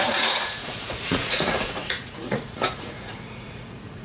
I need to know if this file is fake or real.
fake